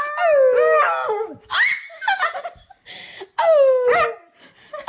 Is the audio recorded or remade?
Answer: recorded